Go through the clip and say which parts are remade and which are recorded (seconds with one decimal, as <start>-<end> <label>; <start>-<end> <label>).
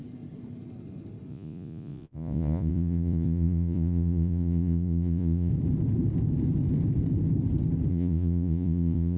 0.0-1.3 recorded; 1.3-5.5 remade; 5.5-7.9 recorded; 7.9-9.2 remade